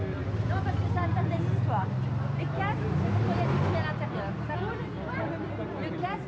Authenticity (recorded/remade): recorded